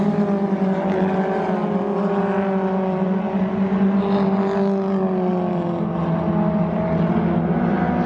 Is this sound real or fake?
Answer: real